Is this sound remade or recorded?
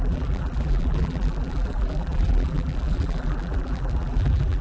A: remade